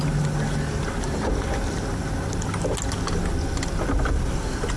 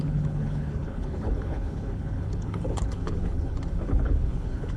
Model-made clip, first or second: second